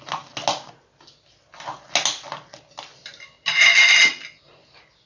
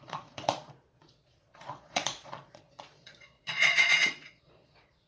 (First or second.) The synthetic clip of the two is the second